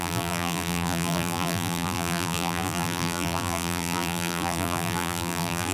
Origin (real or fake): fake